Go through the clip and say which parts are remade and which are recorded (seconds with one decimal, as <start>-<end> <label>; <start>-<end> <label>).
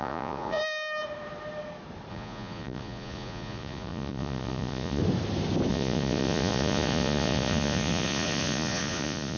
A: 0.0-0.6 remade; 0.6-2.1 recorded; 2.1-5.0 remade; 5.0-5.7 recorded; 5.7-9.4 remade